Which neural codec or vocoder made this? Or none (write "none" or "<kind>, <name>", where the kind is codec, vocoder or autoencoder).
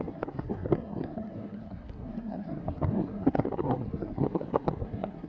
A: codec, SNAC